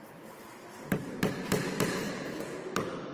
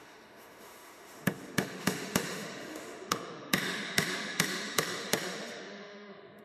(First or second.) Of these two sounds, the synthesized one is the second